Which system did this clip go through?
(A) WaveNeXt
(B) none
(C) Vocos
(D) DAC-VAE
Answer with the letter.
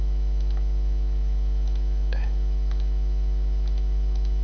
D